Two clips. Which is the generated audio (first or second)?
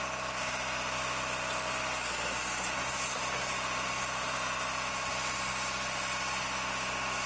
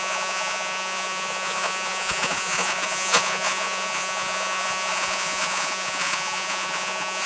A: second